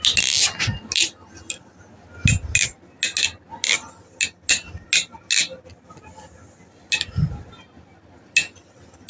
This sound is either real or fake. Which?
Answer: real